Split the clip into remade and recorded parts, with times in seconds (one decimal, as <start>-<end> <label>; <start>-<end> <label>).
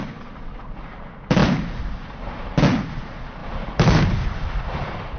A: 0.0-3.4 recorded; 3.4-4.0 remade; 4.0-5.2 recorded